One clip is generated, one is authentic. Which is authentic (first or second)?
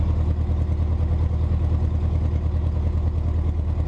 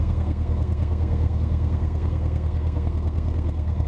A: first